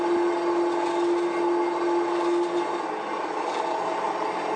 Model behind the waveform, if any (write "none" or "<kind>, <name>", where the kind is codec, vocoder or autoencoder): none